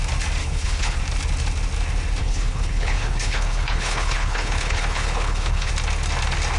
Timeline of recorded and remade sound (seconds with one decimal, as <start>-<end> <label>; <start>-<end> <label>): 0.0-0.4 recorded; 0.4-1.0 remade; 1.0-2.2 recorded; 2.2-5.7 remade; 5.7-6.6 recorded